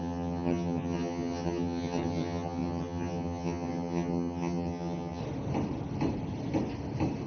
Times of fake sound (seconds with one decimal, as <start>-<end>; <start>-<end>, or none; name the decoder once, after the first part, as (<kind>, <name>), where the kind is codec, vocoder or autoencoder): 0.0-5.2 (vocoder, HiFi-GAN)